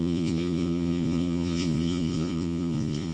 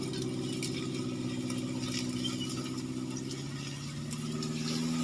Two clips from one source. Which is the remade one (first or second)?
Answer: first